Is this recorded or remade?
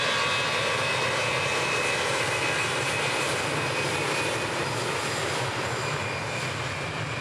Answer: remade